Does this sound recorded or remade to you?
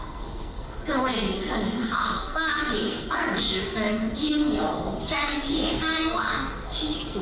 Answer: remade